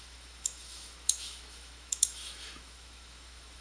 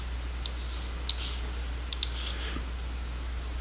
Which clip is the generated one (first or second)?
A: first